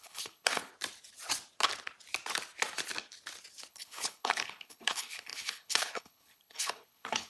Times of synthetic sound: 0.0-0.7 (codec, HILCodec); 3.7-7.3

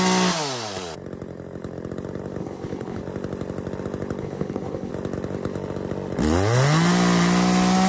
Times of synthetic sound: 2.4-3.0 (codec, HILCodec); 4.2-4.9

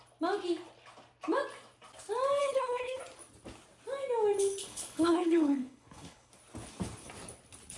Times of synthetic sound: 2.4-3.0 (codec, HILCodec); 4.6-6.3